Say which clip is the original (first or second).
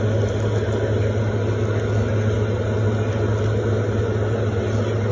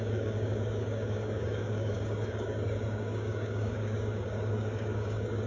first